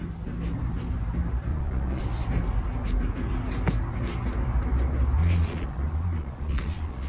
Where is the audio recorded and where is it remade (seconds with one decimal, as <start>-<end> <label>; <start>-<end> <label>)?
0.0-1.5 recorded; 1.5-2.0 remade; 2.0-5.2 recorded; 5.2-7.1 remade